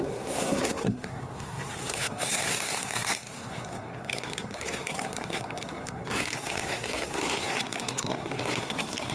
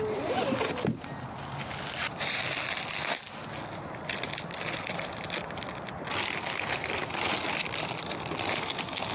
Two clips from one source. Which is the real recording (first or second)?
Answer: second